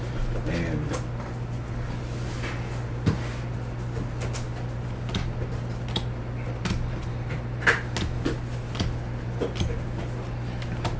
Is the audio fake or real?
real